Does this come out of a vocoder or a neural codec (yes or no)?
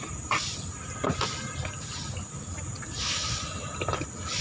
no